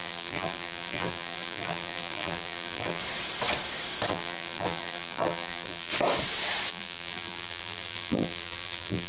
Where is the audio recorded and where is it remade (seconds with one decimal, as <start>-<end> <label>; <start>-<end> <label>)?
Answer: 0.0-3.0 remade; 3.0-4.1 recorded; 4.1-5.9 remade; 5.9-6.7 recorded; 6.7-9.1 remade